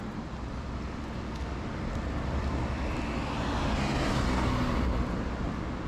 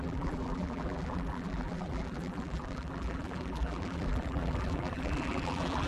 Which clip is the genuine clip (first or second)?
first